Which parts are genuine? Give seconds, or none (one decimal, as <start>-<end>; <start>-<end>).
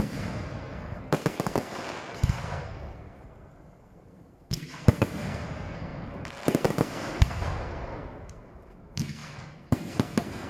none